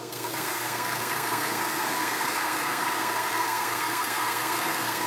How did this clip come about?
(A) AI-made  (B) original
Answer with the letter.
A